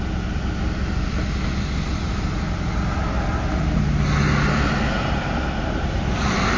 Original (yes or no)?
yes